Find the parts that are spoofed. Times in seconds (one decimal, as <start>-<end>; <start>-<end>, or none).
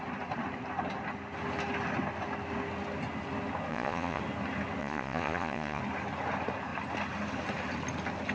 3.7-4.2; 4.8-5.8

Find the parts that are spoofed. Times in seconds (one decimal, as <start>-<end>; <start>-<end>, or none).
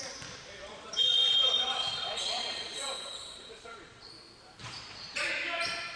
0.6-4.1; 4.6-5.3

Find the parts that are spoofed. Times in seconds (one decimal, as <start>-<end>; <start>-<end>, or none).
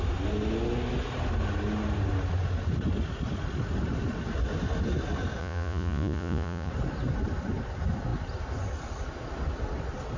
5.4-6.7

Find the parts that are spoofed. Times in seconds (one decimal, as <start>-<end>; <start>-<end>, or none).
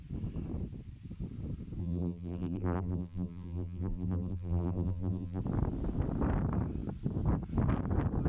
1.8-5.4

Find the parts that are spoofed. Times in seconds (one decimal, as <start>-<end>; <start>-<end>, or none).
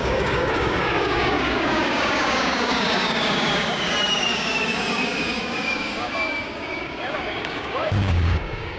0.0-8.8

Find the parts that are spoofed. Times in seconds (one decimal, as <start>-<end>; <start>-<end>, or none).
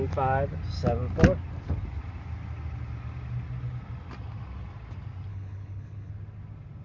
5.3-6.1